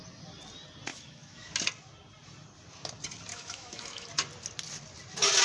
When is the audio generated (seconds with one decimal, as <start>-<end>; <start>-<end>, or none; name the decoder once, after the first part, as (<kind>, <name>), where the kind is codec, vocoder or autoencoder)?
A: 0.9-1.5 (autoencoder, DAC-VAE); 3.3-4.1